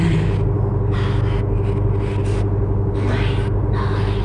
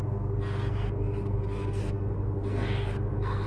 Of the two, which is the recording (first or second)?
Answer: first